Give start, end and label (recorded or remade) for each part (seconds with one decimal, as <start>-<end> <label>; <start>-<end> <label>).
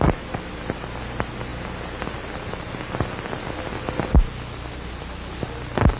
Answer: 0.0-6.0 recorded